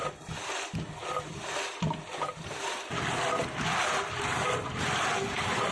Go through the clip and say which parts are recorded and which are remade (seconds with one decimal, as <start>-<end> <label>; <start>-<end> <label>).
0.0-5.7 recorded